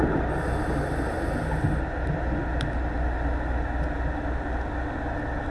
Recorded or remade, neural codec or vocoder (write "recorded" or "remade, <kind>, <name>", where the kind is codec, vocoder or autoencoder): recorded